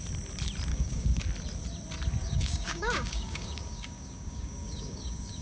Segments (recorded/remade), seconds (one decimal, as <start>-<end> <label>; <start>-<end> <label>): 0.0-0.7 recorded; 0.7-1.2 remade; 1.2-2.2 recorded; 2.2-5.4 remade